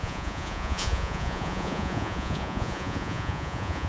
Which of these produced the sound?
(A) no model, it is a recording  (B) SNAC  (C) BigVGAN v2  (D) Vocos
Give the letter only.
D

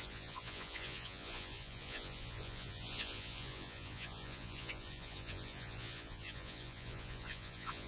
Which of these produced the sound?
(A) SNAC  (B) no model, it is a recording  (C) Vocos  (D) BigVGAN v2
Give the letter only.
C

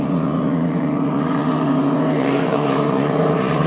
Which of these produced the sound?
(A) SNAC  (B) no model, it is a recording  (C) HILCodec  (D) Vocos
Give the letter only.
D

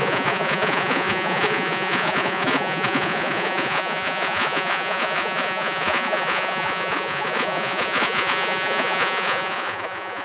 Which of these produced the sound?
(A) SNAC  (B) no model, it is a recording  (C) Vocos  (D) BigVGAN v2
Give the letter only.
C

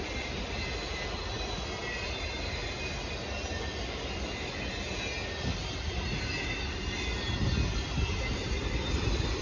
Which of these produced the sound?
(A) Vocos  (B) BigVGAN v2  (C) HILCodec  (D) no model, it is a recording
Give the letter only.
D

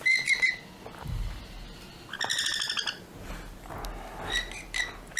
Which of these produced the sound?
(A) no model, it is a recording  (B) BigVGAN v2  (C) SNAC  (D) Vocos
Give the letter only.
A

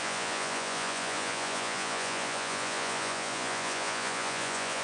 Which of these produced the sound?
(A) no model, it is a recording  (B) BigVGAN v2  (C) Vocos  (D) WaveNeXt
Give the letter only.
C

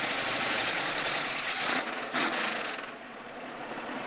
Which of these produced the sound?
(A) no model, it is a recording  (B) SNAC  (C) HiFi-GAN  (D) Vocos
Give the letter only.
D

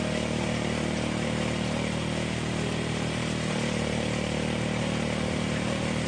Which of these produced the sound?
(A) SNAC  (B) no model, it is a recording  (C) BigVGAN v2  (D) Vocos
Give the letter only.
B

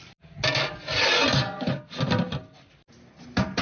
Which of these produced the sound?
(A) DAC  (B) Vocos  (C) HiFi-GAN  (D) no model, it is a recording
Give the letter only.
D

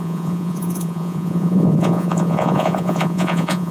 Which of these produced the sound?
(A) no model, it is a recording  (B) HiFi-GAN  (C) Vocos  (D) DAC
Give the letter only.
C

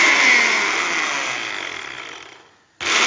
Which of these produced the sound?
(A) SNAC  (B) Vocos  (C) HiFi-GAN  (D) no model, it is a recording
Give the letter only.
D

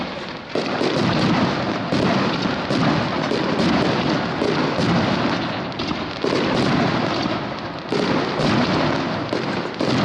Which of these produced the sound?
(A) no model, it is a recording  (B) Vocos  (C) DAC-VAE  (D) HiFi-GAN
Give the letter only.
A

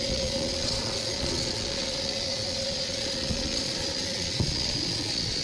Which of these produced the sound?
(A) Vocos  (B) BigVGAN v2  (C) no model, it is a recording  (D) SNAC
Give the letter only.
A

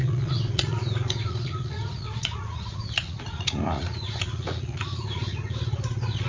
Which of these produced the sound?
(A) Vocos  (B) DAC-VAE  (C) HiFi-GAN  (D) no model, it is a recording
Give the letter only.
A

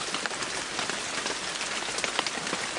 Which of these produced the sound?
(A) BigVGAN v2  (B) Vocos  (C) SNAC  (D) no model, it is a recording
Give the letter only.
D